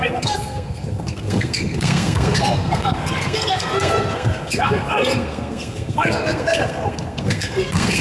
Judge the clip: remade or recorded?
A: remade